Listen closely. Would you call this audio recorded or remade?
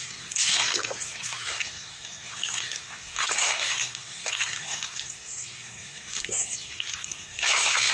remade